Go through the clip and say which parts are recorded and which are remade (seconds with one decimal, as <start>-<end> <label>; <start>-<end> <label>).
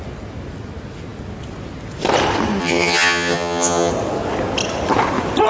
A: 0.0-2.6 recorded; 2.6-3.9 remade; 3.9-5.5 recorded